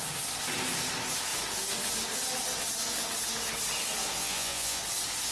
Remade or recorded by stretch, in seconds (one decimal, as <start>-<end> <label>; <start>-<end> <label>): 0.0-4.2 recorded; 4.2-4.8 remade; 4.8-5.3 recorded